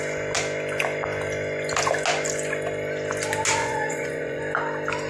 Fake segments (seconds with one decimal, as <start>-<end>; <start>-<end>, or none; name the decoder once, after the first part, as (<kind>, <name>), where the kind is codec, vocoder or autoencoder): 3.6-4.4 (vocoder, Vocos)